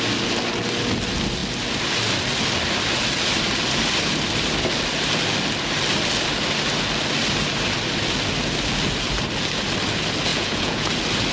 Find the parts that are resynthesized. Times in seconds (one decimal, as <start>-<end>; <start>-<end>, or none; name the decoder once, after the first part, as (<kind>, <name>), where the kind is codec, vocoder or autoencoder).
10.3-10.9 (vocoder, Vocos)